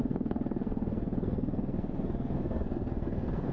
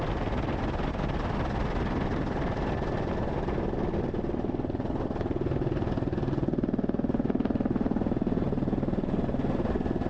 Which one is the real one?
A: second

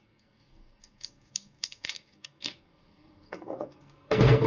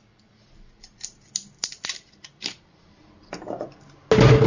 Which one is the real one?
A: second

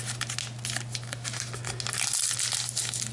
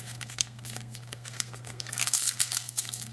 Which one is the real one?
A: first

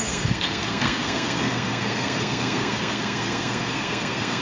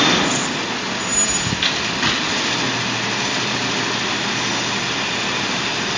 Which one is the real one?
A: second